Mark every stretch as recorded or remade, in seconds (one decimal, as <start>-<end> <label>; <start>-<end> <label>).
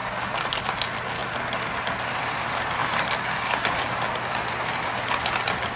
0.0-5.8 recorded